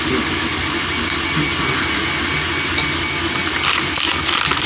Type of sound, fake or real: real